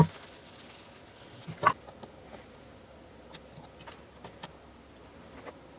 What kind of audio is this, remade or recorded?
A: recorded